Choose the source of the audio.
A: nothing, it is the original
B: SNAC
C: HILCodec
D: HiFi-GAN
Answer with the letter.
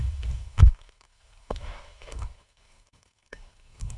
B